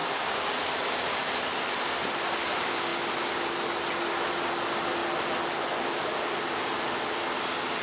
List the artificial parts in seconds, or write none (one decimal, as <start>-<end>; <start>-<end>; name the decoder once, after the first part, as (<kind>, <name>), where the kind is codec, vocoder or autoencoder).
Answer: 0.0-0.5 (codec, DAC)